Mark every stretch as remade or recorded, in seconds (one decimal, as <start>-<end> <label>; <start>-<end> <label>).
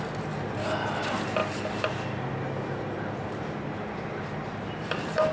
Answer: 0.0-5.3 recorded